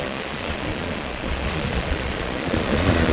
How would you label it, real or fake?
fake